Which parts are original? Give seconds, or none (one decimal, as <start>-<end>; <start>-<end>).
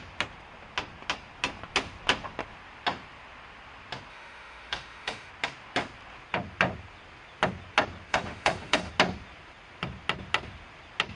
0.0-4.1; 5.3-8.1; 8.9-11.2